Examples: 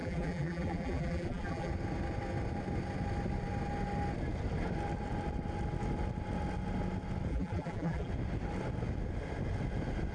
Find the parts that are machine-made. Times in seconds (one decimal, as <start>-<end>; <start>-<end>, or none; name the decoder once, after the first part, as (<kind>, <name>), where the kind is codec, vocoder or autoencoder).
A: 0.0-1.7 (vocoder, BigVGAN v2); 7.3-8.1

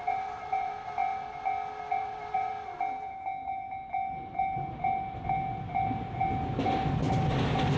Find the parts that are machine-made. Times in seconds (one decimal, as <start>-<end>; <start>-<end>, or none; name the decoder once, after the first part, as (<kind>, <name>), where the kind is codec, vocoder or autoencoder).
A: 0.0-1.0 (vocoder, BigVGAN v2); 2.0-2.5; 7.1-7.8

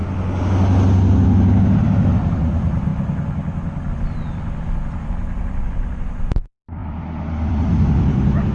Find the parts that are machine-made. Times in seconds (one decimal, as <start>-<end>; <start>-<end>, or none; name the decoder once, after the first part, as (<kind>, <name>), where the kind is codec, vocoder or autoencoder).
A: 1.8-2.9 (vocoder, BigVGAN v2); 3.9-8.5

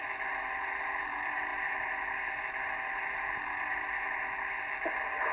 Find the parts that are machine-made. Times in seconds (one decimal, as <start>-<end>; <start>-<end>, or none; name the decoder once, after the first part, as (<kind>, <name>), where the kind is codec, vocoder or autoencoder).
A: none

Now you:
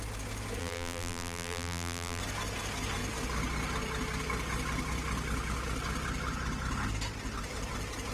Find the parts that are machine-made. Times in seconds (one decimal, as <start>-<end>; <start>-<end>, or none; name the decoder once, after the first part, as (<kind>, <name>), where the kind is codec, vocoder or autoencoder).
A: 0.6-2.2 (vocoder, BigVGAN v2)